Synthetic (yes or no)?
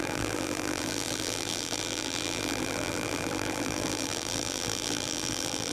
yes